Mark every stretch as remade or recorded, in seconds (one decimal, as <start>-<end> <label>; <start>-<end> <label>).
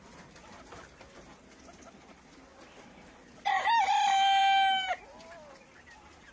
0.0-6.3 recorded